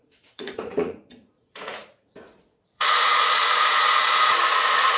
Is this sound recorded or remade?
remade